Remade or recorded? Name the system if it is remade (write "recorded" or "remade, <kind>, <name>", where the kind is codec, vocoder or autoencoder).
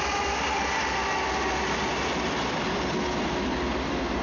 recorded